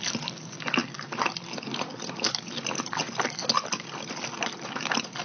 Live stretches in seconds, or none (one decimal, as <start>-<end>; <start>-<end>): 0.0-5.2